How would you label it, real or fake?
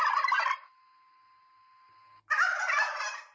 real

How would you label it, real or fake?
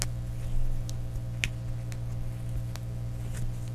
real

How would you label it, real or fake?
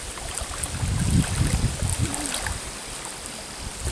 real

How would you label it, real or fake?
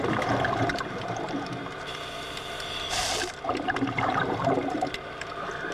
fake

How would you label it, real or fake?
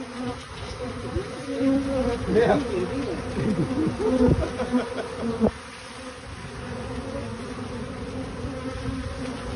real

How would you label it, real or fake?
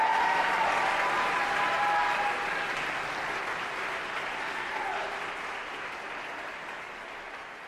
real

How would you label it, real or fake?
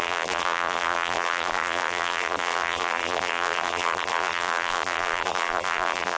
fake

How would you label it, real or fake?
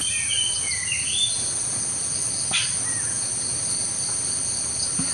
real